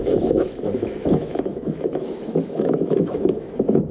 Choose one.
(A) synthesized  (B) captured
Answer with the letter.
A